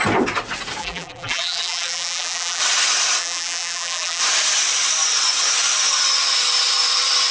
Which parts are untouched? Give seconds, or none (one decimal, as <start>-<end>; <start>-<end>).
0.0-0.8; 2.6-3.2; 4.2-7.3

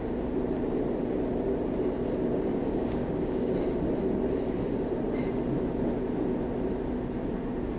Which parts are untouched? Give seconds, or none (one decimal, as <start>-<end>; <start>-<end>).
0.0-2.6; 3.5-7.8

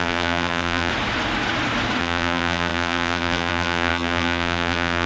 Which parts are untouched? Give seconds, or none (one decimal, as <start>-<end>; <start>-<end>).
0.9-2.0

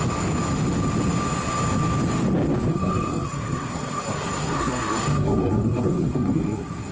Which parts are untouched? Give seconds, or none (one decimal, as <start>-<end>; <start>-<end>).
0.0-2.7

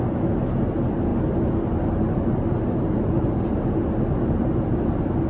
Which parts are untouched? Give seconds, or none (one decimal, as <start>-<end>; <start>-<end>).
0.0-5.3

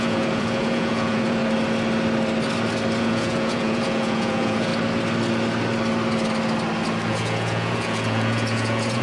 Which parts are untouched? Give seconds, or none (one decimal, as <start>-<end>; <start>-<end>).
1.4-3.0; 4.7-7.1

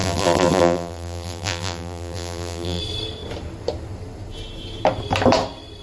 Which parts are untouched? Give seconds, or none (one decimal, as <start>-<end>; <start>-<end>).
2.8-5.8